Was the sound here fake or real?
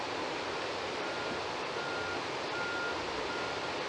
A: real